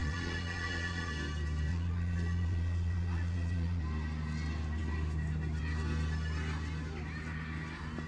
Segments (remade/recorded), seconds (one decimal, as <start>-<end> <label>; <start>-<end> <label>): 0.0-1.1 remade; 1.1-1.7 recorded; 1.7-3.8 remade; 3.8-8.1 recorded